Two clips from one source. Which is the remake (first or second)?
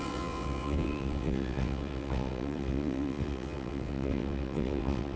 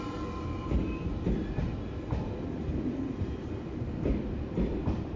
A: first